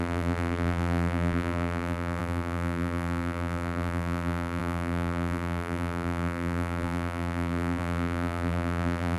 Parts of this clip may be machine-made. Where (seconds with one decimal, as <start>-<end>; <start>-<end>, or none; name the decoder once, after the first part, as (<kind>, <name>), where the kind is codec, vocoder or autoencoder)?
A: 0.0-9.2 (vocoder, BigVGAN v2)